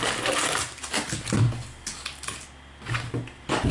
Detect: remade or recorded recorded